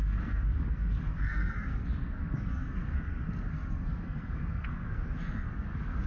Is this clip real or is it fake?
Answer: fake